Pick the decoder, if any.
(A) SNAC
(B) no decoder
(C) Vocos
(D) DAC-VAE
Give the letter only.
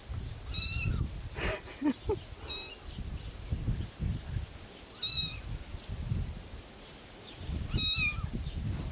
B